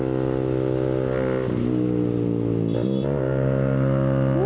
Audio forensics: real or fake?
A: real